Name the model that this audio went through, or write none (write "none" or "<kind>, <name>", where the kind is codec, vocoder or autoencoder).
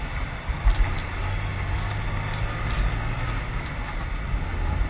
none